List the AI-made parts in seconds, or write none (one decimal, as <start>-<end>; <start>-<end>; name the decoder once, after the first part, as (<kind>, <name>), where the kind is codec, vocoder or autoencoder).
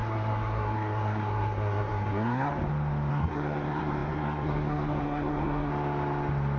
0.0-2.5 (codec, SNAC); 3.1-5.7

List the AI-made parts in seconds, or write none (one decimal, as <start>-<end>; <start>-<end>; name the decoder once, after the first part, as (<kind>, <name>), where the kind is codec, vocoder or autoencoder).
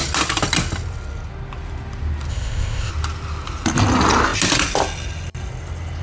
2.3-2.9 (codec, ZipCodec)